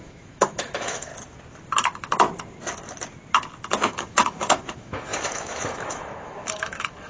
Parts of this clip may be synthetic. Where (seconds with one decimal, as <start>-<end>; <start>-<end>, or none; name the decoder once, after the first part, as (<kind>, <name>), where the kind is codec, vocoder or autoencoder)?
0.0-1.1 (autoencoder, DAC-VAE); 3.9-7.1